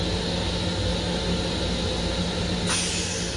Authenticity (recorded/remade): recorded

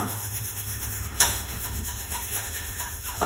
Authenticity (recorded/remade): remade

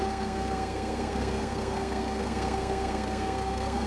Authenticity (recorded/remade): remade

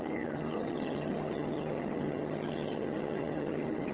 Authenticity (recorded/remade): remade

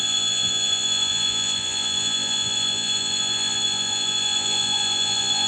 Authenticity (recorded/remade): remade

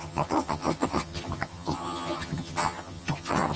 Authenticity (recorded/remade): remade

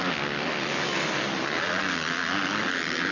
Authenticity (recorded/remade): recorded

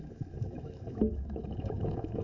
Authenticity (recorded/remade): remade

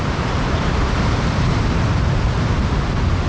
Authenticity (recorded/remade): remade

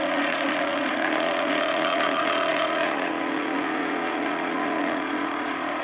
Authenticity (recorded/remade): remade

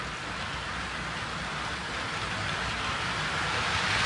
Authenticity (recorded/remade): recorded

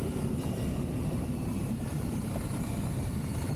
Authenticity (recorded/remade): remade